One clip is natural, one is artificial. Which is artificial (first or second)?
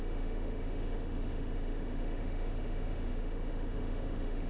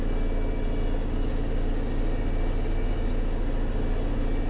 first